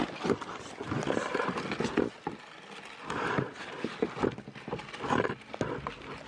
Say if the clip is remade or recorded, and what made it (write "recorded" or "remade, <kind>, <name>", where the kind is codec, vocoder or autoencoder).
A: recorded